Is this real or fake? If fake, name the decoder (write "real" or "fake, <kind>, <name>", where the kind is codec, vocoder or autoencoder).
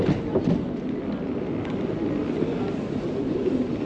real